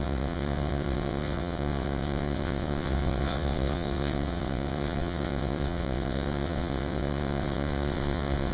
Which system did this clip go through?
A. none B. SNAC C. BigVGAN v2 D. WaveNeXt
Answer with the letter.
D